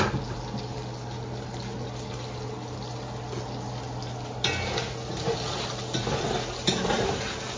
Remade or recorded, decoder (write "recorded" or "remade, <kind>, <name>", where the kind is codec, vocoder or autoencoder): recorded